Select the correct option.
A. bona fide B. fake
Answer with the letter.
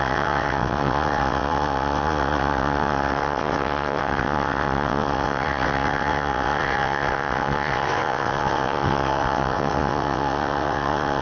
B